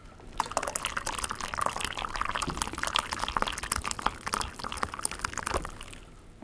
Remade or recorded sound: recorded